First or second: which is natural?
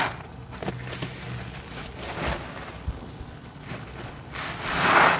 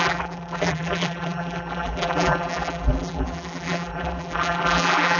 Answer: first